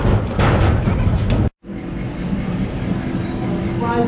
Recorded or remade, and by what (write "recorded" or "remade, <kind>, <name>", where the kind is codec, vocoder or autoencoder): recorded